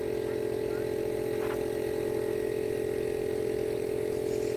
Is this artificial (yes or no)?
no